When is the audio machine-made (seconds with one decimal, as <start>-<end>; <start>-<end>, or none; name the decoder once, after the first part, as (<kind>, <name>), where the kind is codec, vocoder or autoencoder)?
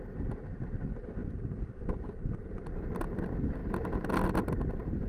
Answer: 1.2-2.3 (vocoder, BigVGAN v2)